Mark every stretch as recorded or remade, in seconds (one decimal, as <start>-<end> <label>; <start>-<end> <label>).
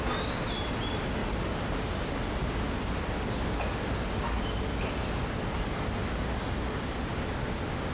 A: 0.0-7.9 recorded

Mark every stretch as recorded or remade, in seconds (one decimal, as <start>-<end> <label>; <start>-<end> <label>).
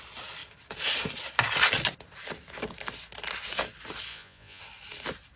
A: 0.0-4.1 recorded; 4.1-4.6 remade; 4.6-5.4 recorded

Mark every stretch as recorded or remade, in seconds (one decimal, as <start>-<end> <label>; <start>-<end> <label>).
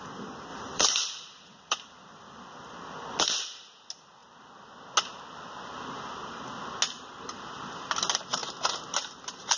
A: 0.0-0.5 recorded; 0.5-3.2 remade; 3.2-9.6 recorded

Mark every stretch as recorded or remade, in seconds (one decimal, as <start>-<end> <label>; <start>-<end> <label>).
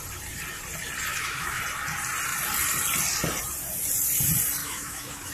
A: 0.0-1.1 recorded; 1.1-1.6 remade; 1.6-4.6 recorded; 4.6-5.3 remade